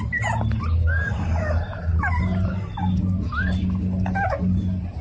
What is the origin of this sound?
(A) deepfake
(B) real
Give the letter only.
B